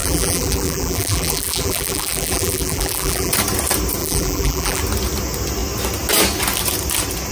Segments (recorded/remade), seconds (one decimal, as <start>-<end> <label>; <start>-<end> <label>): 0.0-3.3 remade; 3.3-4.0 recorded; 4.0-4.8 remade; 4.8-7.3 recorded